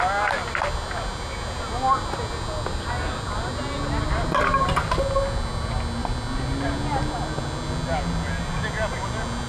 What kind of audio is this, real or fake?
real